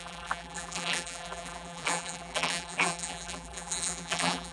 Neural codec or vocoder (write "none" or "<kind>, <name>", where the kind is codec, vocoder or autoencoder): vocoder, BigVGAN v2